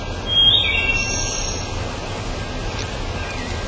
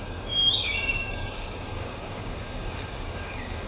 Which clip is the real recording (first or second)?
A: first